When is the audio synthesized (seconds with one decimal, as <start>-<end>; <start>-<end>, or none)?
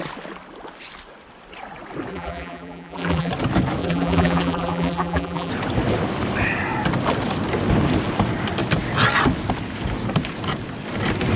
2.1-3.3; 3.8-5.5